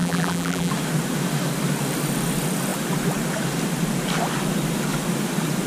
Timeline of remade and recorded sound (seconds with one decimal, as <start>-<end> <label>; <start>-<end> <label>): 0.0-0.7 remade; 0.7-5.7 recorded

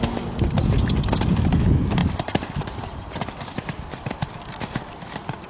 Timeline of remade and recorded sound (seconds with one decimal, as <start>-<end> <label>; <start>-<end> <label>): 0.0-2.0 recorded; 2.0-5.5 remade

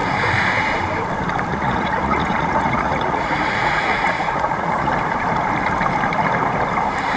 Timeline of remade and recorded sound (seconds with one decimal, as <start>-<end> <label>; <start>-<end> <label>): 0.0-1.5 recorded; 1.5-4.9 remade; 4.9-7.2 recorded